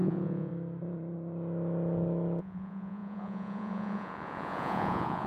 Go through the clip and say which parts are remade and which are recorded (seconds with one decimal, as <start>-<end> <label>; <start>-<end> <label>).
0.0-0.5 remade; 0.5-2.4 recorded; 2.4-5.3 remade